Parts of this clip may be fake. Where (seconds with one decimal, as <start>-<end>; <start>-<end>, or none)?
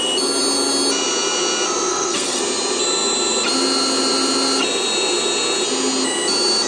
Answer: 1.9-2.4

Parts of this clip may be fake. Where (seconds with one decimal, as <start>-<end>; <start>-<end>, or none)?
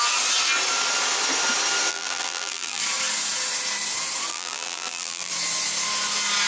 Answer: 1.9-2.8; 4.3-5.3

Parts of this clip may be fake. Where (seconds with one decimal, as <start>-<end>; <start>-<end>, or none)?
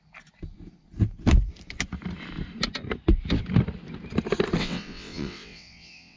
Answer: 4.6-6.2